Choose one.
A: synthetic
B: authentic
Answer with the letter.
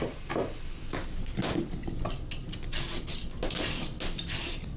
B